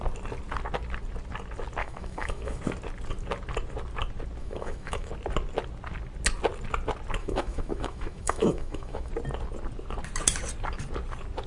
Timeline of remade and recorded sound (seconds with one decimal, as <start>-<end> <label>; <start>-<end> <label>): 0.0-1.8 recorded; 1.8-2.6 remade; 2.6-4.4 recorded; 4.4-5.1 remade; 5.1-7.2 recorded; 7.2-9.1 remade; 9.1-11.5 recorded